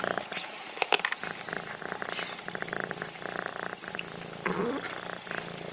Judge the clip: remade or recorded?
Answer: recorded